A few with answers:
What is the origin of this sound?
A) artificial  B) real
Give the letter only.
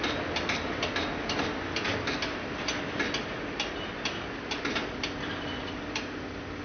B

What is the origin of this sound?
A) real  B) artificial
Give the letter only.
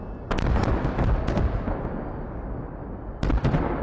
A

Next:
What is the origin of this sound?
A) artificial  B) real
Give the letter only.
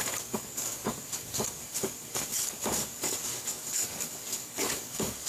A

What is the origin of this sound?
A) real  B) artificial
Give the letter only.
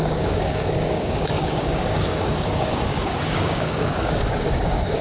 B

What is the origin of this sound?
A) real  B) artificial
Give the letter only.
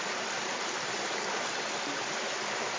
A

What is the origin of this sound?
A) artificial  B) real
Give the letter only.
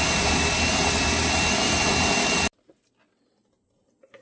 B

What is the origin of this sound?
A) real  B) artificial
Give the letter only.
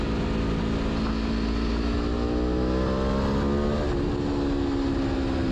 A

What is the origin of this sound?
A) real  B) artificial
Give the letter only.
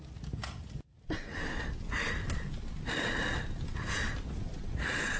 A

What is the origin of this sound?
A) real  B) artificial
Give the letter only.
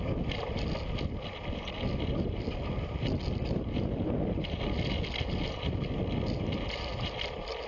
A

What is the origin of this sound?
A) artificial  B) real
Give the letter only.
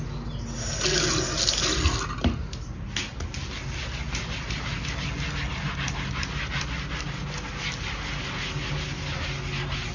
B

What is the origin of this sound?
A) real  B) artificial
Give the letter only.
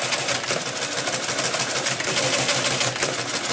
A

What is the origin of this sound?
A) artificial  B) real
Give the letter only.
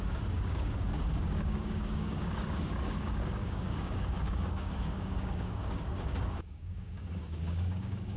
A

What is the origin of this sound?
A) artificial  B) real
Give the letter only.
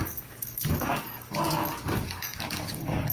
A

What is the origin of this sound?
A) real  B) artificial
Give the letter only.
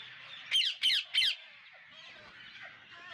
A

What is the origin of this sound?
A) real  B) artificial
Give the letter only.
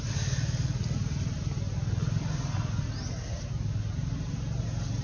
A